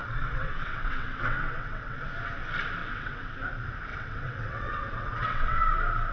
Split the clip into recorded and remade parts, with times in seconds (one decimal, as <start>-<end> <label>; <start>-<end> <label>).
0.0-2.0 remade; 2.0-2.8 recorded; 2.8-3.4 remade; 3.4-3.9 recorded; 3.9-5.6 remade; 5.6-6.1 recorded